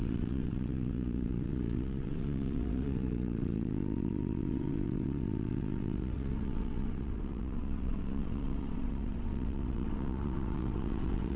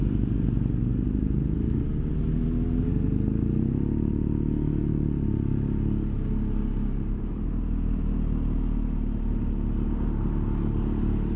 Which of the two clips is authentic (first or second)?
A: second